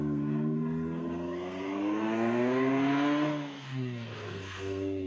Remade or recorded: remade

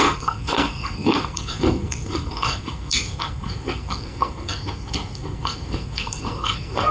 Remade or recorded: remade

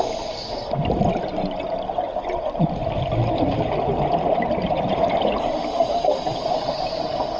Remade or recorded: recorded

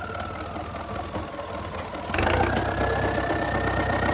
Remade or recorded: recorded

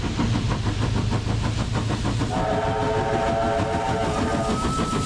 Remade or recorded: recorded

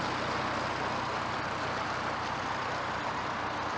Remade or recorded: recorded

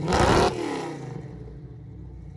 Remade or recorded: recorded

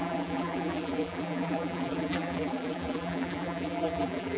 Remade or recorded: remade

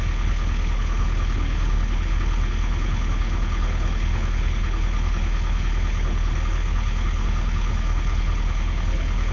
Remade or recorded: remade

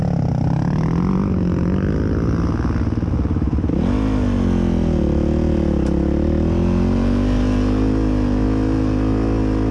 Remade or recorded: recorded